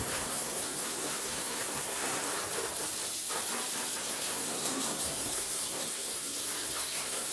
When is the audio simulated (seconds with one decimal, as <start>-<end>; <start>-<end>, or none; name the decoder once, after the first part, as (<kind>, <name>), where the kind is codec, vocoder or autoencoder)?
0.0-2.2 (codec, SNAC); 4.0-7.3